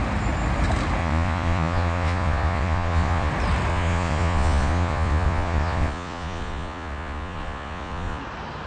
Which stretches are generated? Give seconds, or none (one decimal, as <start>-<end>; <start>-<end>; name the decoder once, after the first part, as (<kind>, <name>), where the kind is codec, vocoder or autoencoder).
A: 1.0-3.3 (vocoder, Vocos); 3.7-8.2